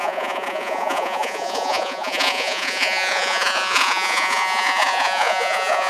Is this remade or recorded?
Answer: remade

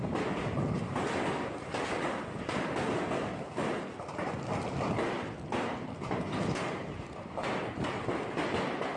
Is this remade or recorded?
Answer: recorded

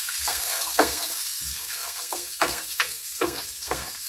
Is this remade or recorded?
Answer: remade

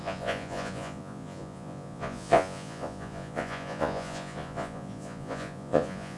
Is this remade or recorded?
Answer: remade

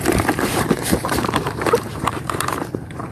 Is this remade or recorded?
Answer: remade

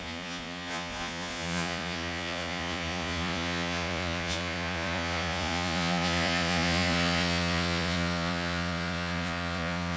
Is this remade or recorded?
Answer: remade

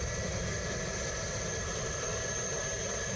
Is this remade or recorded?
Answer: recorded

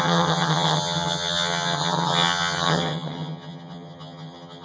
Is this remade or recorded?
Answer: remade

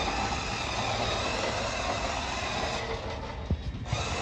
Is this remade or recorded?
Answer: recorded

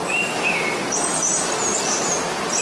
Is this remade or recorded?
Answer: recorded